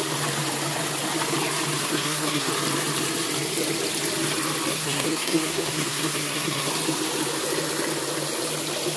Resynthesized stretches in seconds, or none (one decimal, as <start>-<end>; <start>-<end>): 1.8-2.5; 4.7-6.7

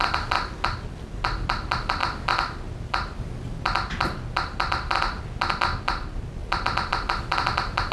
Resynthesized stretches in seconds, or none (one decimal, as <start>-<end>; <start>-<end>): none

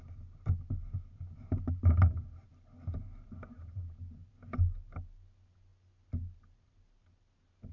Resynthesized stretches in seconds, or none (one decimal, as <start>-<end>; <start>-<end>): none

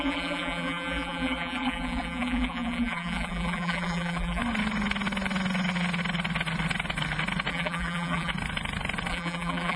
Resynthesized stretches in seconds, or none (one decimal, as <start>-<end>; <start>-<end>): 0.0-4.4; 7.5-8.3; 9.1-9.8

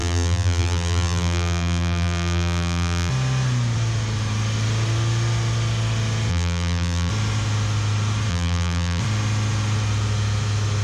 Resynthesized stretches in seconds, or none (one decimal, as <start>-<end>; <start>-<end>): 0.0-3.1; 6.3-7.1; 8.3-9.0

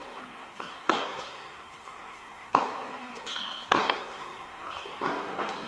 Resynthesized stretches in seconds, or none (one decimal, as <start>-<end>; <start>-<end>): 0.0-5.7

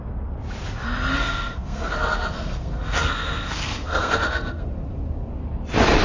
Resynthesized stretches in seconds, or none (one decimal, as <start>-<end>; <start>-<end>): 1.1-4.7

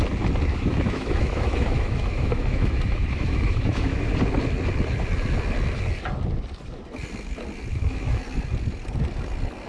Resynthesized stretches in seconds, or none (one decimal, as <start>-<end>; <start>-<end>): 0.5-4.1; 7.7-8.2